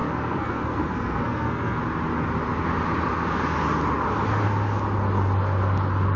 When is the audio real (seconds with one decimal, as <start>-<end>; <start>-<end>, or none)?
1.8-6.2